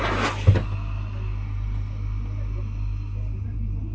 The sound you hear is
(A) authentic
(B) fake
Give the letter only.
A